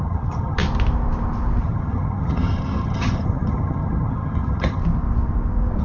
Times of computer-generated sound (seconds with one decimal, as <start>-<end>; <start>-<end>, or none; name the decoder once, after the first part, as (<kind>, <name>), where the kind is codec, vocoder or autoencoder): 0.0-0.6 (vocoder, HiFi-GAN); 1.6-4.8